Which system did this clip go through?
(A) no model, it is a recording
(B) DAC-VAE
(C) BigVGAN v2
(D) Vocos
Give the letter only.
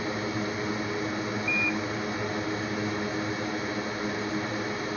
A